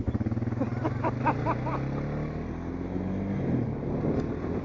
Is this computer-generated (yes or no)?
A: no